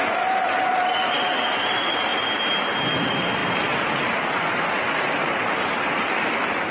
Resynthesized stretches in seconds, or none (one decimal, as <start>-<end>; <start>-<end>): none